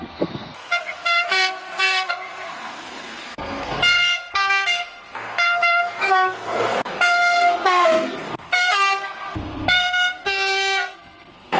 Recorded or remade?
remade